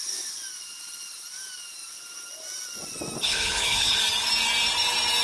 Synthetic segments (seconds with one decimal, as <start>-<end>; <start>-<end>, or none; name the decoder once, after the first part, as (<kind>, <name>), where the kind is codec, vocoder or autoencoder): 3.2-4.0 (codec, HILCodec)